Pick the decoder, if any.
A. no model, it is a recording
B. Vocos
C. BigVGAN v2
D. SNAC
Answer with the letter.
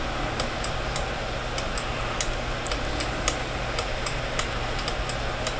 A